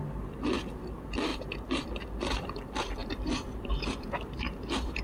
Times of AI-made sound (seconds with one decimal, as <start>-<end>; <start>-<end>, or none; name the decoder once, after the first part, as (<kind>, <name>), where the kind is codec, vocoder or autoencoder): 1.3-1.9 (vocoder, BigVGAN v2); 3.0-5.0